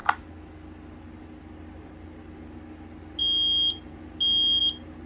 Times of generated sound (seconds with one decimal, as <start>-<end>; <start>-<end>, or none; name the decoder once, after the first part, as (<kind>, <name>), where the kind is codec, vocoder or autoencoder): none

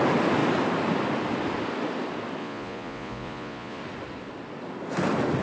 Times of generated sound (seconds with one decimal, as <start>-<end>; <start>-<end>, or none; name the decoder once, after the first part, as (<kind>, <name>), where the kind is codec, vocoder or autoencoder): 2.4-3.8 (vocoder, Vocos)

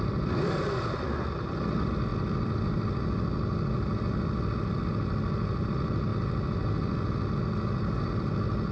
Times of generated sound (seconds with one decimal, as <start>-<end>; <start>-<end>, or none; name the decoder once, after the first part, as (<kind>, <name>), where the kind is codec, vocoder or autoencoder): none

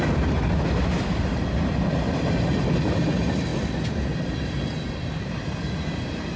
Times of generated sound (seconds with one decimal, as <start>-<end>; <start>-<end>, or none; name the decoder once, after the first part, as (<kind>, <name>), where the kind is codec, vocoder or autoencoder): none

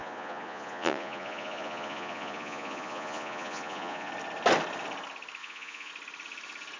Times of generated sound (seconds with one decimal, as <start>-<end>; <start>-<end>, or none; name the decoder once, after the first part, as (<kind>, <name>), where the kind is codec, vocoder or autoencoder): 0.0-4.1 (vocoder, Vocos); 5.4-5.9

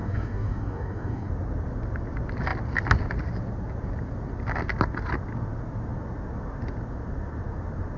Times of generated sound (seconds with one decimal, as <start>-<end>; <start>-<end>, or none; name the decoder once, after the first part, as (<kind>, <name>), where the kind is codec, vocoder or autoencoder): 0.0-1.3 (codec, DAC)

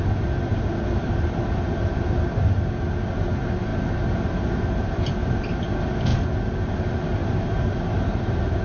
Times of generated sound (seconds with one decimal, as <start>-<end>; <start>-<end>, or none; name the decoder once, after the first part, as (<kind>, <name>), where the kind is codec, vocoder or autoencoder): 0.5-1.4 (vocoder, BigVGAN v2); 7.2-8.6